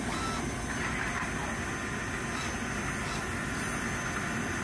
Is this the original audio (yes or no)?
yes